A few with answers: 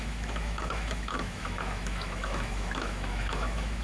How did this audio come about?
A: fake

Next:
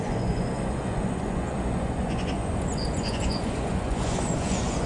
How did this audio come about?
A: fake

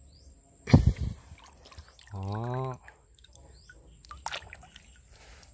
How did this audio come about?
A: real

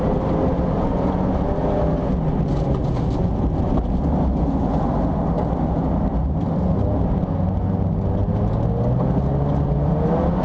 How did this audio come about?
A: real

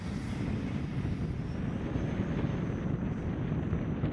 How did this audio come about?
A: real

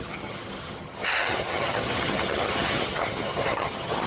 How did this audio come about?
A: fake